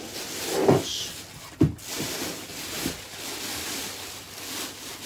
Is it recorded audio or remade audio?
recorded